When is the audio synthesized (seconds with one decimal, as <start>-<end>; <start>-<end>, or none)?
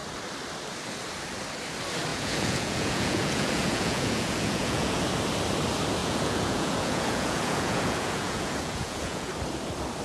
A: 2.1-5.0; 6.0-9.3